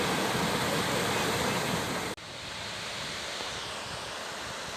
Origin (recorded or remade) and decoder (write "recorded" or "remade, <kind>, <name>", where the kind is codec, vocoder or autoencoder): recorded